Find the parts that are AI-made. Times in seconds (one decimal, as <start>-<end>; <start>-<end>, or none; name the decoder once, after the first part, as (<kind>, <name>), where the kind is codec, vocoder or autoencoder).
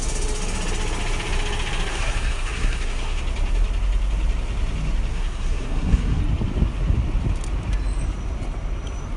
1.9-3.2 (codec, SNAC); 5.1-6.2